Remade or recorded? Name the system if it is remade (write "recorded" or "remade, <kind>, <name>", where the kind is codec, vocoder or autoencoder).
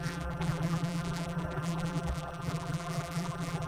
remade, vocoder, BigVGAN v2